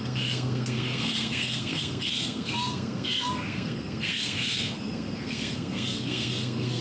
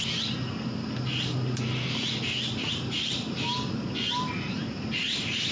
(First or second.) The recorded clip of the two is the second